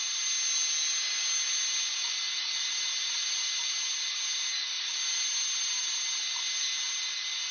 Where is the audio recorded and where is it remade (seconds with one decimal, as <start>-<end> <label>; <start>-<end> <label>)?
0.0-7.5 recorded

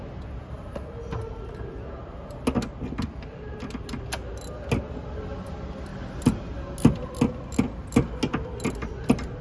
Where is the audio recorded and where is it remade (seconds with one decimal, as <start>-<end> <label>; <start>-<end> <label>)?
0.0-9.4 recorded

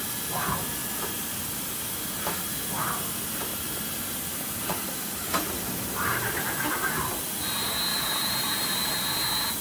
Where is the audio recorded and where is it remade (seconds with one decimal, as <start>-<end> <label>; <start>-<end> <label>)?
0.0-3.5 recorded; 3.5-6.4 remade; 6.4-7.9 recorded; 7.9-8.9 remade; 8.9-9.6 recorded

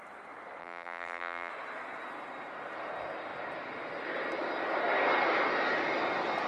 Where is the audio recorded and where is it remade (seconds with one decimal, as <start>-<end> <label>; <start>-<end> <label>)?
0.0-0.6 recorded; 0.6-1.5 remade; 1.5-6.5 recorded

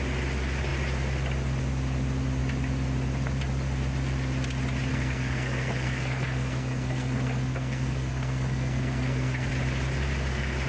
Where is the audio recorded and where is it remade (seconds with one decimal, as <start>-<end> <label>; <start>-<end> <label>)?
0.0-4.9 recorded; 4.9-9.5 remade; 9.5-10.7 recorded

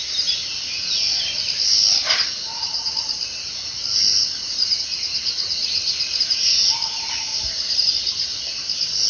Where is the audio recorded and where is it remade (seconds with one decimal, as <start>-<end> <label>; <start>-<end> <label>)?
0.0-2.0 recorded; 2.0-2.9 remade; 2.9-4.6 recorded; 4.6-6.6 remade; 6.6-9.1 recorded